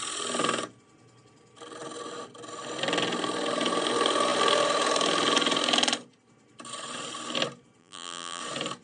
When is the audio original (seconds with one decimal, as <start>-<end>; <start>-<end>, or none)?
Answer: 0.0-7.8; 8.4-8.8